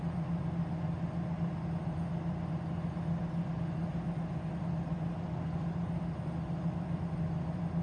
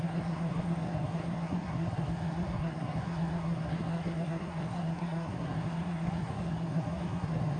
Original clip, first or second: first